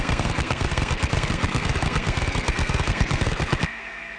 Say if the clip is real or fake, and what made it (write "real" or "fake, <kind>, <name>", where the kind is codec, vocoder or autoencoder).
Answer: fake, codec, SNAC